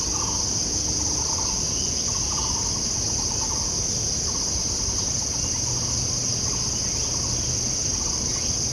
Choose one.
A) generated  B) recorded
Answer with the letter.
B